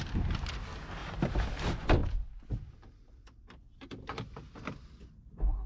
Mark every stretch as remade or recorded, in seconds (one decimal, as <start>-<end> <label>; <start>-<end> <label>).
0.0-1.0 recorded; 1.0-1.6 remade; 1.6-5.7 recorded

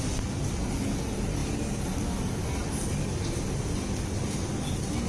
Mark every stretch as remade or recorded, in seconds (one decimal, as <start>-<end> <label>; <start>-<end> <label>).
0.0-5.1 recorded

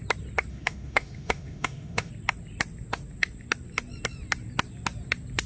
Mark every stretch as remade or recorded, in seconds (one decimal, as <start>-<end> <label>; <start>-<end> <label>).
0.0-0.5 recorded; 0.5-2.1 remade; 2.1-5.5 recorded

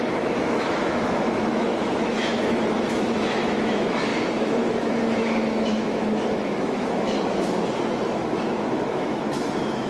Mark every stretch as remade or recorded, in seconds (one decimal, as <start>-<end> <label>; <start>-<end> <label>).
0.0-9.9 remade

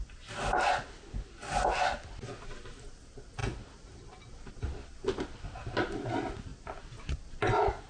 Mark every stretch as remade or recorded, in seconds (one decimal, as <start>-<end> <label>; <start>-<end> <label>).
0.0-7.9 recorded